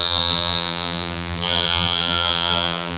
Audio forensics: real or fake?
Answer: fake